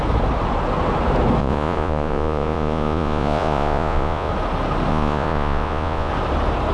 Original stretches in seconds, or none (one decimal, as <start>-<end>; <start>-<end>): 0.0-1.4; 4.3-4.9; 6.1-6.7